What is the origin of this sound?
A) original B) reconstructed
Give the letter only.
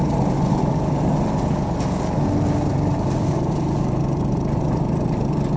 A